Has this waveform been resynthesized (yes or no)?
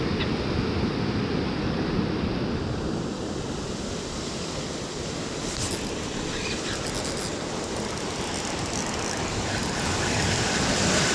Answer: no